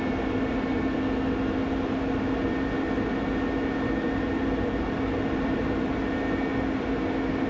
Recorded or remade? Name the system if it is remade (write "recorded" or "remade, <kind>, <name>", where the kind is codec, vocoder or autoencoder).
recorded